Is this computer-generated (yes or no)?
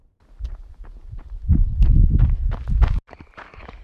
no